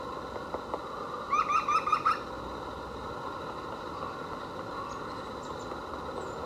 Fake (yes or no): no